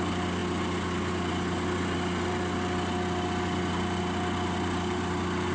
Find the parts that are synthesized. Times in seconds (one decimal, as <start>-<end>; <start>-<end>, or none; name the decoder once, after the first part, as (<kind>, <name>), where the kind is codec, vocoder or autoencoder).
none